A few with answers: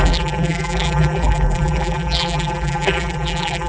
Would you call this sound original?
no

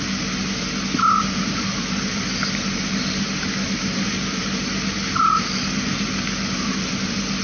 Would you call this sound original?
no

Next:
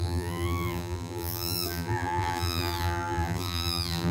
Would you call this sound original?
no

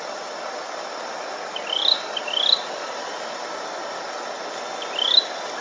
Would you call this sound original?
yes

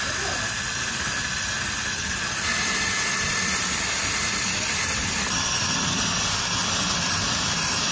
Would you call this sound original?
no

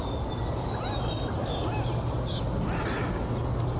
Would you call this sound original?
yes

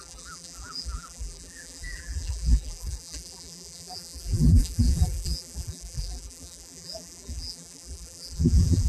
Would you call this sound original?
no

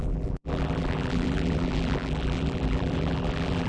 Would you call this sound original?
no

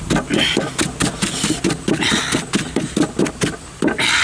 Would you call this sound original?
yes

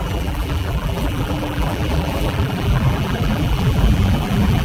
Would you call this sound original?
no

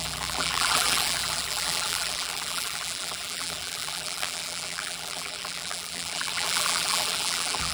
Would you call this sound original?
no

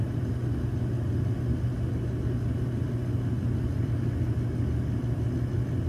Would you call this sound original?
yes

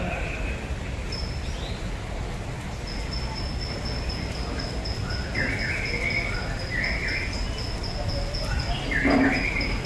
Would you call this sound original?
yes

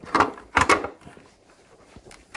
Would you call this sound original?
no